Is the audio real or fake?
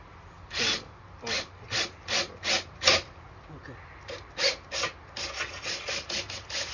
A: real